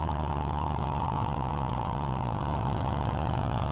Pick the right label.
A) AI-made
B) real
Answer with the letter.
A